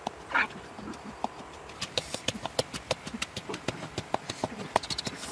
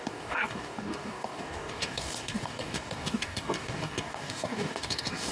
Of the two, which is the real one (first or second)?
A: first